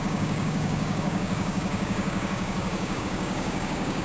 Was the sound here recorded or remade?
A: remade